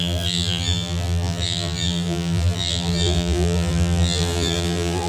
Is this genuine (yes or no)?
no